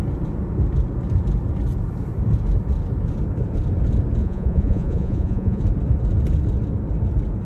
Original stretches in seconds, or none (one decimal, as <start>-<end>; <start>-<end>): 0.0-4.2; 5.6-7.4